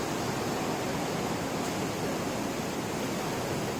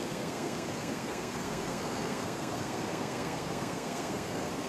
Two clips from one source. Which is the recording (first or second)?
first